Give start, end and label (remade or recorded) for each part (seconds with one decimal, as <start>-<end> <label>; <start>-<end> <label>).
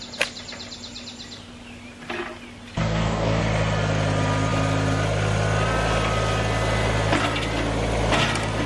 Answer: 0.0-2.8 recorded; 2.8-3.4 remade; 3.4-8.7 recorded